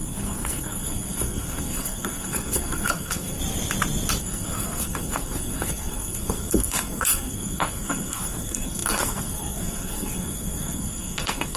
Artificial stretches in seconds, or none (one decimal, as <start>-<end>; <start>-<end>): 0.0-3.4; 4.2-11.6